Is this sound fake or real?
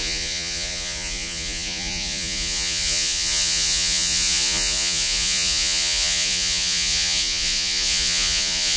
fake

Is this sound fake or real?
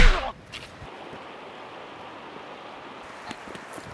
real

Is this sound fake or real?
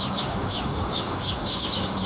fake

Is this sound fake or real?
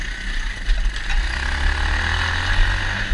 real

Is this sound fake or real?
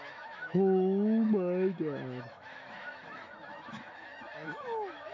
fake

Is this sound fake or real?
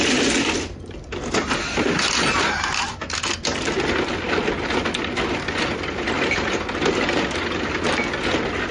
real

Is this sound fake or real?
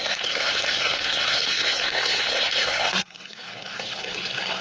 fake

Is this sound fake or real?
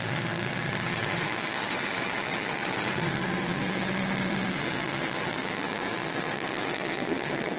fake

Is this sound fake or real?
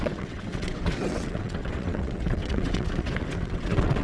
fake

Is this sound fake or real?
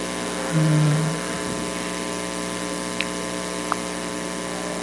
real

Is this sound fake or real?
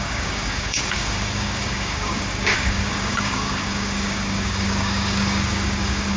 fake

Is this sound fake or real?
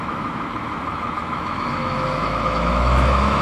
fake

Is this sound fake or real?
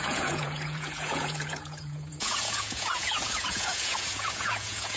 fake